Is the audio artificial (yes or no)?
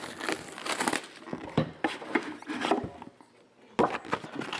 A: no